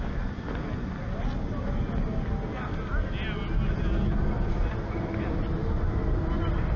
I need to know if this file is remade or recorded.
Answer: recorded